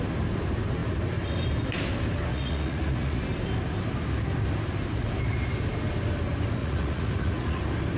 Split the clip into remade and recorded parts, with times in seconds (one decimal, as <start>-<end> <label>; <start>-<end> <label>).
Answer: 0.0-2.3 recorded; 2.3-3.2 remade; 3.2-6.6 recorded; 6.6-7.6 remade; 7.6-8.0 recorded